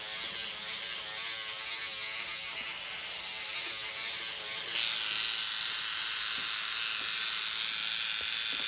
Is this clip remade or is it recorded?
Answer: recorded